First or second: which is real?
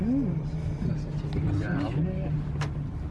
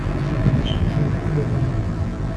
first